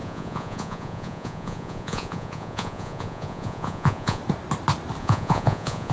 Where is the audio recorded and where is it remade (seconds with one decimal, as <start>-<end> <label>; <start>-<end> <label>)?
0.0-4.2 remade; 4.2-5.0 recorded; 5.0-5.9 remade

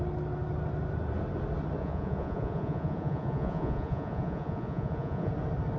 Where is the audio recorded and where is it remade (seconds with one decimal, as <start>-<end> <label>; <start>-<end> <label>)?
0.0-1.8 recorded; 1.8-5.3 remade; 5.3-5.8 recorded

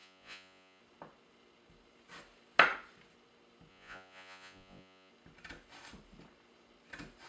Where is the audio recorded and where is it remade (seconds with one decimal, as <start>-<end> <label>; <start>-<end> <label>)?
0.0-0.8 remade; 0.8-3.7 recorded; 3.7-5.1 remade; 5.1-7.3 recorded

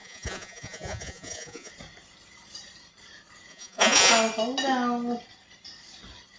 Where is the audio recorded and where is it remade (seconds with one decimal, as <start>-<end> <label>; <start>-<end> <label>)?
0.0-1.7 remade; 1.7-3.5 recorded; 3.5-4.1 remade; 4.1-6.4 recorded